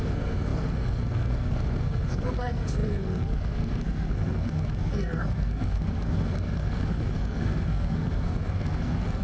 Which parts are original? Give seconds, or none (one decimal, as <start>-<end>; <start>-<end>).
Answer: none